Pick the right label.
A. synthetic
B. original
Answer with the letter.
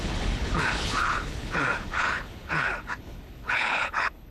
A